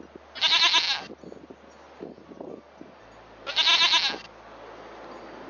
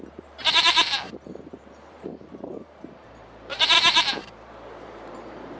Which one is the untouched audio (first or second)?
first